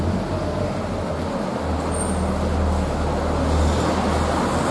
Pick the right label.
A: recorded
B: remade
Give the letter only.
A